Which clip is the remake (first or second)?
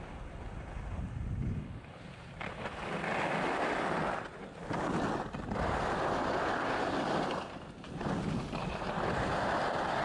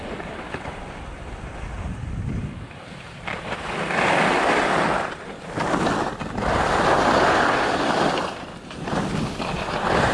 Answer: second